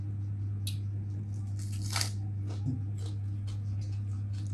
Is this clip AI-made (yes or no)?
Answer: no